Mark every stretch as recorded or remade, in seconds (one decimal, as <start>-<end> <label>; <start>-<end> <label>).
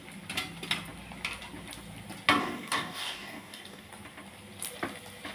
0.0-2.4 recorded; 2.4-3.9 remade; 3.9-5.3 recorded